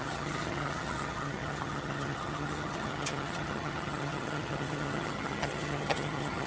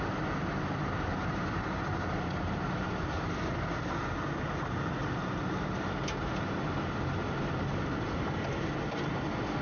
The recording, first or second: second